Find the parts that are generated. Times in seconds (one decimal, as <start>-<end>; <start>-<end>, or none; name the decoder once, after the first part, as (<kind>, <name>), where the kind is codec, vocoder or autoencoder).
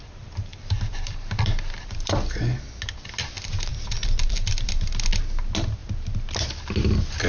0.5-2.4 (vocoder, BigVGAN v2); 3.7-5.0